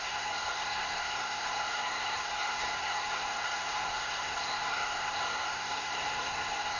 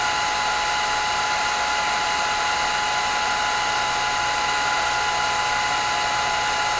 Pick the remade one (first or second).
first